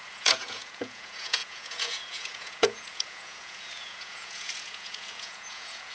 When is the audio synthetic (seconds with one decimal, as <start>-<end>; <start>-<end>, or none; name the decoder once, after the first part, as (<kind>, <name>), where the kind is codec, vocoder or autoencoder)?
0.0-5.9 (vocoder, Vocos)